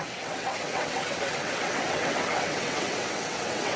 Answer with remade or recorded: remade